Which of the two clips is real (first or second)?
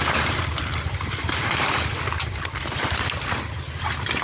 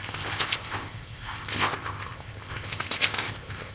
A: first